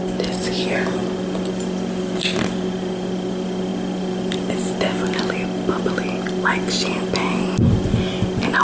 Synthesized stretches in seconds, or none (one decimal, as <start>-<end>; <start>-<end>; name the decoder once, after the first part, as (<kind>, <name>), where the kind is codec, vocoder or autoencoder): none